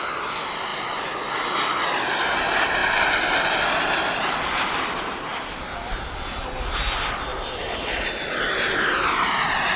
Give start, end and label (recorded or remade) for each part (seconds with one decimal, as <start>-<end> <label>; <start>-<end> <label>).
0.0-0.7 recorded; 0.7-1.3 remade; 1.3-5.3 recorded; 5.3-6.4 remade; 6.4-9.8 recorded